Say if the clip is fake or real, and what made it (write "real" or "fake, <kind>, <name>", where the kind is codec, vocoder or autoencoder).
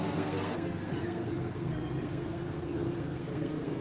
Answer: fake, codec, SNAC